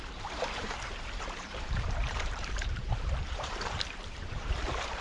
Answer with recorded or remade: remade